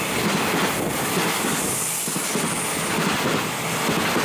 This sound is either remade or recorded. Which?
recorded